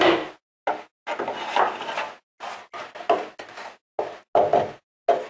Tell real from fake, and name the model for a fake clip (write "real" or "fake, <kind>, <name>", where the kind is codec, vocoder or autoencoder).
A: real